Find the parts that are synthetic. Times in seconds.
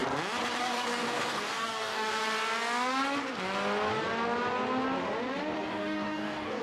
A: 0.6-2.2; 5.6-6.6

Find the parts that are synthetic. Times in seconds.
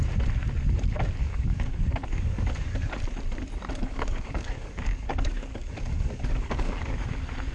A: 1.2-2.9; 3.7-7.1